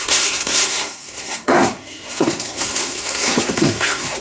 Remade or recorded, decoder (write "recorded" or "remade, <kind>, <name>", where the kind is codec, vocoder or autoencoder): remade, codec, SNAC